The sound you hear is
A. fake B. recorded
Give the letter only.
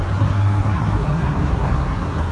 A